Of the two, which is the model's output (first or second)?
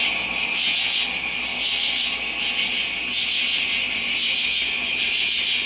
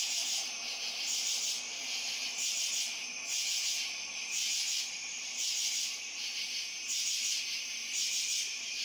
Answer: second